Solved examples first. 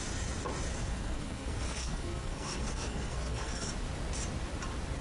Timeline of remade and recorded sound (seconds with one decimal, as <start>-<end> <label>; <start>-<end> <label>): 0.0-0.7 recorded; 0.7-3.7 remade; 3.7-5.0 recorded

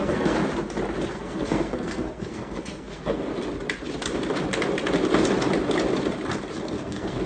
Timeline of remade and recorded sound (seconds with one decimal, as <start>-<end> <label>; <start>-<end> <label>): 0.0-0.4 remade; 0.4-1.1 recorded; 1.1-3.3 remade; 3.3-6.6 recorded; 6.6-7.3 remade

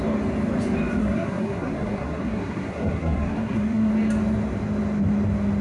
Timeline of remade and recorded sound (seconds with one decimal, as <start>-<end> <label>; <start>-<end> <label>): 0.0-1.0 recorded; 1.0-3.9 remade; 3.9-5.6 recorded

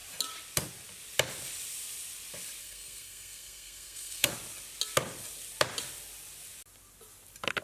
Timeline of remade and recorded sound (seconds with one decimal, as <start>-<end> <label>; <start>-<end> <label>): 0.0-2.6 recorded; 2.6-4.3 remade; 4.3-7.6 recorded

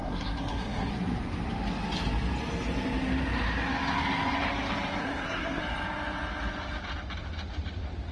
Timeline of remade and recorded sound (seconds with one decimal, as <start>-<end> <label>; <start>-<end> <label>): 0.0-0.9 remade; 0.9-5.0 recorded; 5.0-5.6 remade; 5.6-8.1 recorded